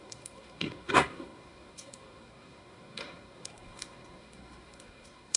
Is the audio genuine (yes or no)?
no